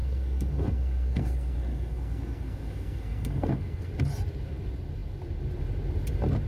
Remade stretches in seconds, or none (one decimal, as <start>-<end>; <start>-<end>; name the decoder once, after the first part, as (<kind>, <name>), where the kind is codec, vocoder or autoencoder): 0.0-3.9 (codec, SNAC)